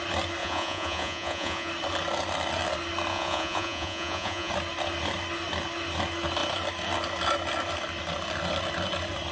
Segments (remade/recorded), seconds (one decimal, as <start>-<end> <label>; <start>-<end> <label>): 0.0-0.4 recorded; 0.4-1.7 remade; 1.7-3.1 recorded; 3.1-4.5 remade; 4.5-9.3 recorded